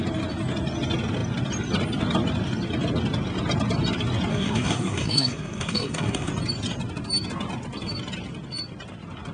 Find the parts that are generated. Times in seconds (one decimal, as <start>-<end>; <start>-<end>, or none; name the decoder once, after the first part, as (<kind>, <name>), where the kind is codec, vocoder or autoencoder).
4.3-6.3 (codec, SNAC)